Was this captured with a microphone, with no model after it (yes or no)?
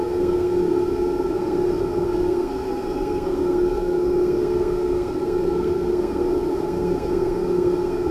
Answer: no